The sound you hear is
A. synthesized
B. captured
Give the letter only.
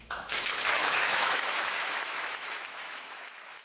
A